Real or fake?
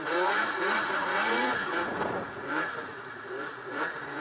fake